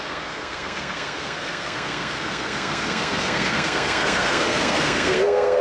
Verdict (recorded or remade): remade